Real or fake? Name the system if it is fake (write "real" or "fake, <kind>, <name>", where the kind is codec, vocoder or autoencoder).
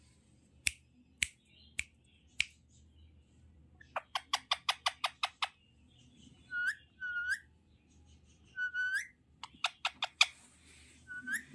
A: real